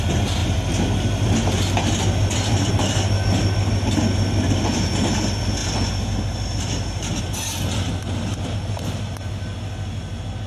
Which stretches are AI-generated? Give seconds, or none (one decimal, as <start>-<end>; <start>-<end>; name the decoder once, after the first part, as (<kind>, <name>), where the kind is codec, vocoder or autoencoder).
none